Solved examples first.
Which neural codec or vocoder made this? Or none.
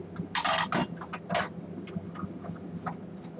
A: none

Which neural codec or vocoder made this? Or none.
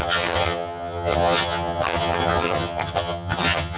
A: vocoder, HiFi-GAN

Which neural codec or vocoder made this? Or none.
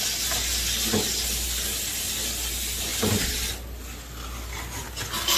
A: none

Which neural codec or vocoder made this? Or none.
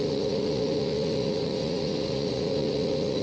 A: vocoder, Vocos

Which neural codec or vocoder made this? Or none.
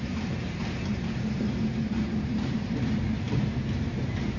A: vocoder, BigVGAN v2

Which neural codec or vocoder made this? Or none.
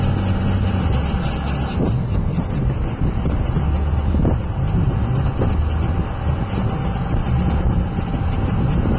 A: none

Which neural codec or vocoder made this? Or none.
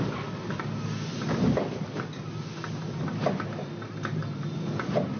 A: none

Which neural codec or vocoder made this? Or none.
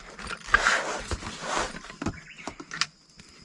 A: none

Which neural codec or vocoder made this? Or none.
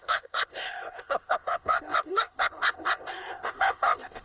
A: codec, ZipCodec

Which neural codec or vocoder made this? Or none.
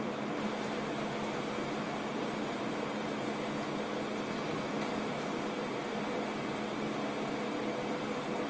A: none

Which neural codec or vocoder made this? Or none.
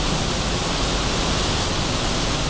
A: vocoder, BigVGAN v2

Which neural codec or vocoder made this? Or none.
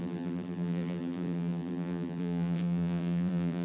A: vocoder, BigVGAN v2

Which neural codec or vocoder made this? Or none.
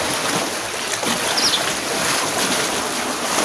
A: none